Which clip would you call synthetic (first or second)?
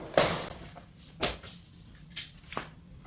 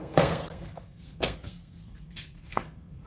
second